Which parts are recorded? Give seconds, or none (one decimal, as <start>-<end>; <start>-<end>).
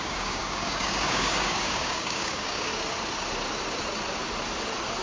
2.7-5.0